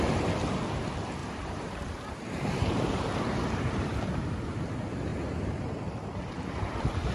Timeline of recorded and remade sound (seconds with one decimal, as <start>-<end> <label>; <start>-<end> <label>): 0.0-1.2 recorded; 1.2-4.3 remade; 4.3-5.1 recorded; 5.1-7.1 remade